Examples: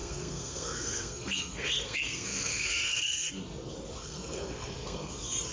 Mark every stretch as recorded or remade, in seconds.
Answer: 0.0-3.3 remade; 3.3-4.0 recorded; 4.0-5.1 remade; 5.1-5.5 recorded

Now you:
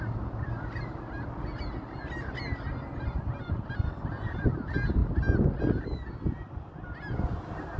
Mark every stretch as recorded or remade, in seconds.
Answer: 0.0-7.8 recorded

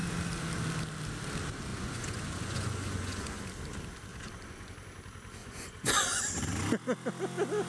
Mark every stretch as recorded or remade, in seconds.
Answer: 0.0-1.7 recorded; 1.7-3.4 remade; 3.4-4.1 recorded; 4.1-4.7 remade; 4.7-5.4 recorded; 5.4-6.2 remade; 6.2-7.7 recorded